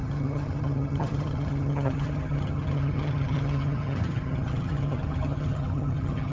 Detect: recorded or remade remade